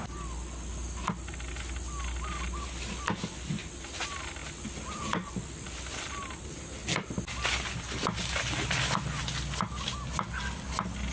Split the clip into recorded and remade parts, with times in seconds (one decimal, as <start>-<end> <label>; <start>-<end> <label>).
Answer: 0.0-11.1 recorded